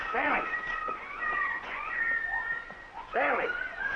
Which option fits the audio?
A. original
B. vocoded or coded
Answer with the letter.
B